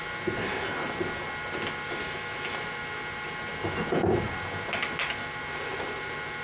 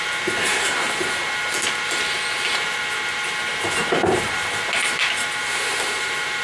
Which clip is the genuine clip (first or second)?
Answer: first